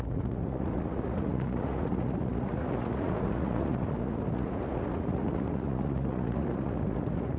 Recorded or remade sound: remade